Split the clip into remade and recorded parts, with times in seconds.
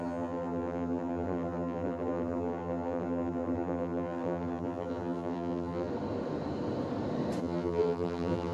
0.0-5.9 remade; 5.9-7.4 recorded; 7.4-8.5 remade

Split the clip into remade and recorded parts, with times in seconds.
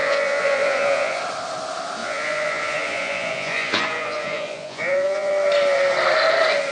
0.0-1.2 remade; 1.2-2.0 recorded; 2.0-5.3 remade; 5.3-6.7 recorded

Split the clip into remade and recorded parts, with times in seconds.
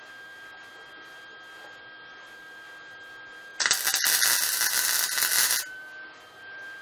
0.0-6.8 recorded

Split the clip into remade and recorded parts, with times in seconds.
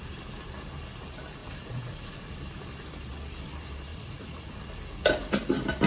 0.0-1.4 recorded; 1.4-2.4 remade; 2.4-3.9 recorded; 3.9-4.6 remade; 4.6-5.9 recorded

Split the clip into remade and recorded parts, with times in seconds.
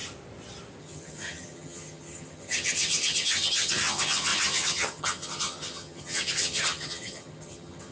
0.0-0.8 recorded; 0.8-7.9 remade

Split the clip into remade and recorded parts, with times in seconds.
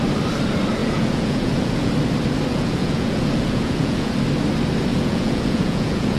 0.0-0.8 recorded; 0.8-1.9 remade; 1.9-2.5 recorded; 2.5-4.1 remade; 4.1-4.9 recorded; 4.9-6.2 remade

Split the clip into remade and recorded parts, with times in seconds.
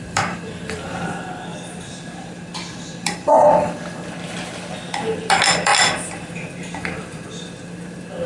0.0-5.7 remade; 5.7-7.0 recorded; 7.0-8.3 remade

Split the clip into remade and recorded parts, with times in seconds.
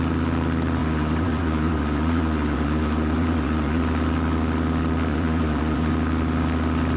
0.0-0.8 recorded; 0.8-3.8 remade; 3.8-5.1 recorded; 5.1-5.9 remade; 5.9-7.0 recorded